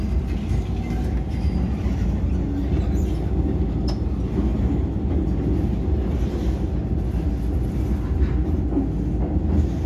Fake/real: real